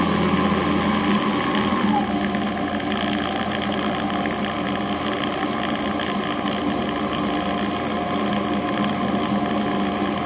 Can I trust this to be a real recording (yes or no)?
yes